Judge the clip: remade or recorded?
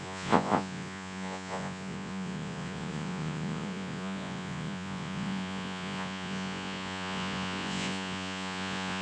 remade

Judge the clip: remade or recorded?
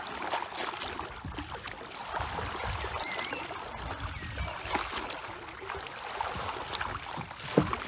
recorded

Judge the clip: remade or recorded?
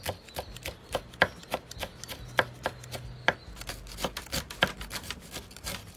recorded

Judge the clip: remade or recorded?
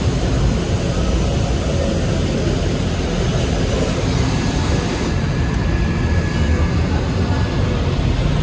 recorded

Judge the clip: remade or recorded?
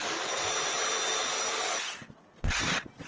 recorded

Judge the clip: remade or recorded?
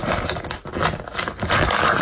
recorded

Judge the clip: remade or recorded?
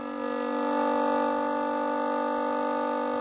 recorded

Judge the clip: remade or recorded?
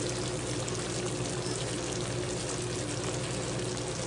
recorded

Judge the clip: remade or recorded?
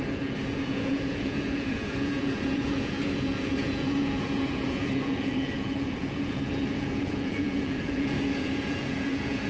remade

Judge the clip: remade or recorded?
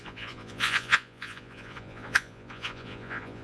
remade